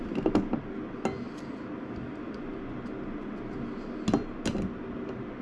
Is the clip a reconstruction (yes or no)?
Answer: no